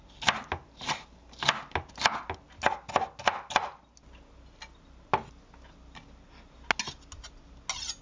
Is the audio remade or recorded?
recorded